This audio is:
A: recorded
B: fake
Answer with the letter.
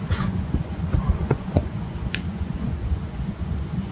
B